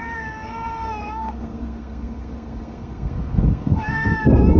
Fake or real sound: fake